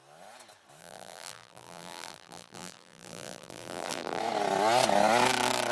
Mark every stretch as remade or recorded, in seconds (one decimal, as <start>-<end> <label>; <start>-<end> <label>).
0.0-0.8 recorded; 0.8-4.2 remade; 4.2-5.7 recorded